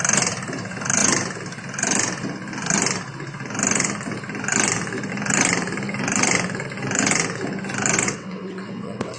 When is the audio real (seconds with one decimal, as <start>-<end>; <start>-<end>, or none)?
0.0-8.0